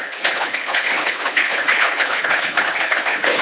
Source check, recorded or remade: remade